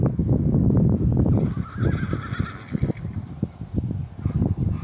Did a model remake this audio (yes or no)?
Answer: no